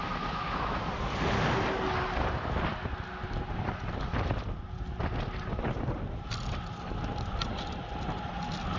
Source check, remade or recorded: recorded